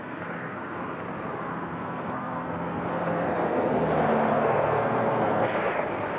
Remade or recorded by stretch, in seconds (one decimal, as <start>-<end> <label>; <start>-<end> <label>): 0.0-0.8 remade; 0.8-1.5 recorded; 1.5-3.8 remade; 3.8-4.3 recorded; 4.3-5.7 remade; 5.7-6.2 recorded